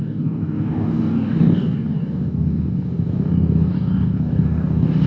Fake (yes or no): yes